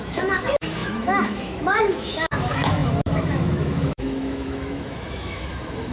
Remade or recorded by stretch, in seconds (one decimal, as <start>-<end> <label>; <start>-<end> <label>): 0.0-5.9 remade